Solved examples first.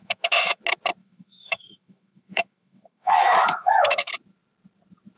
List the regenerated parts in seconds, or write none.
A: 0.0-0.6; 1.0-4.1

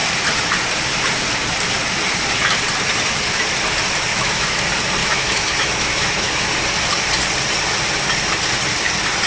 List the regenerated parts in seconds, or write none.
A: 4.1-4.6; 5.0-6.5

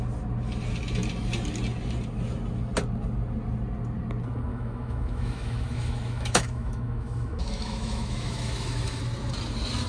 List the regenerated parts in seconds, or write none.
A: 4.5-9.0

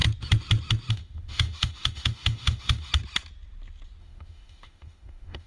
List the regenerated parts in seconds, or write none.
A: 0.9-2.9; 4.0-5.5

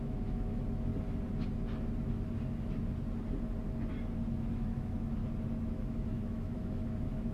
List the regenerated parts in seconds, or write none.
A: 0.0-0.9; 4.4-5.2; 5.7-7.3

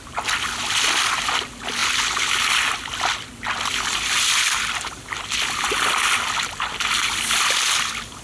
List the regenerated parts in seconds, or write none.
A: none

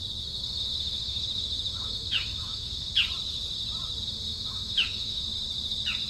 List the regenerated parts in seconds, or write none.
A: 0.5-2.9; 4.3-5.2

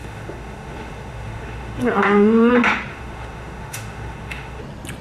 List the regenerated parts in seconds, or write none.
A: 0.0-2.5; 2.9-4.6